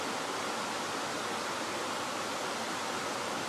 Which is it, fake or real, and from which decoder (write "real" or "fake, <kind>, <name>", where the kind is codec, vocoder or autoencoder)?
real